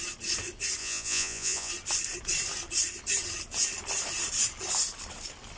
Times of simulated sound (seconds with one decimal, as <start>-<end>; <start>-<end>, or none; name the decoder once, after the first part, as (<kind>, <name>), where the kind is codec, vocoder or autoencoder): 0.8-1.7 (vocoder, Vocos)